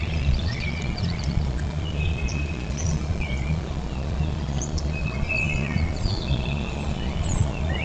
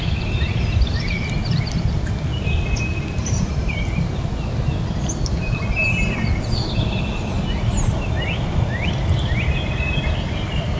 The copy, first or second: first